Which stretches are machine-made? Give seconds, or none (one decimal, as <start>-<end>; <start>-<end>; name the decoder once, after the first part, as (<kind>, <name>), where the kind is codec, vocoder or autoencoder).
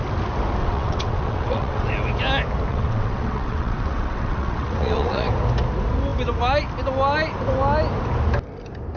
0.6-1.9 (vocoder, WaveNeXt); 2.7-5.3